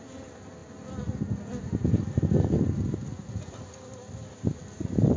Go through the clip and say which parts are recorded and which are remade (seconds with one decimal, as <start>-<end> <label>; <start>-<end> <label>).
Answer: 0.0-5.2 recorded